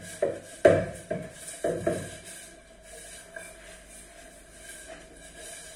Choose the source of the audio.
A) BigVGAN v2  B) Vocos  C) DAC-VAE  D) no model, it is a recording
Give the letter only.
D